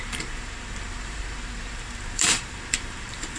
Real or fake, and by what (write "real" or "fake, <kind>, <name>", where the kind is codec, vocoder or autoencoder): fake, vocoder, BigVGAN v2